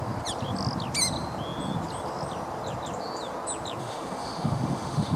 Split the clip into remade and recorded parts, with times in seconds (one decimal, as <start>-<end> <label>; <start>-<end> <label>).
0.0-3.8 recorded; 3.8-5.2 remade